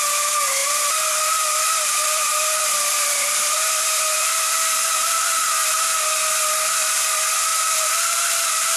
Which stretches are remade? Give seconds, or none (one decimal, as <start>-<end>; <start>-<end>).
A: 0.6-5.5; 7.5-8.8